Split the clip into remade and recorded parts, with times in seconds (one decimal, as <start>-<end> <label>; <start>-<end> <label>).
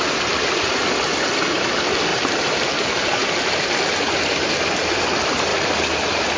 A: 0.0-2.1 recorded; 2.1-2.6 remade; 2.6-5.5 recorded; 5.5-6.4 remade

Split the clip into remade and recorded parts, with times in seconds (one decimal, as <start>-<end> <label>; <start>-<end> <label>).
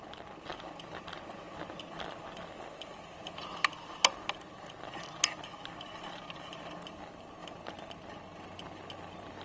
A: 0.0-9.4 recorded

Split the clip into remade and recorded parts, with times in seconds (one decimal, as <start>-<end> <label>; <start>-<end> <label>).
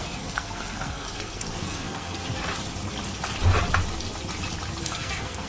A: 0.0-2.2 remade; 2.2-4.8 recorded; 4.8-5.5 remade